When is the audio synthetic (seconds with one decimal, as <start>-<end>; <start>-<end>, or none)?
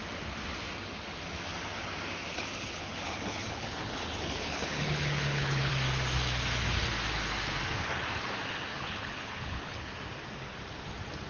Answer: 2.3-5.7; 8.7-9.9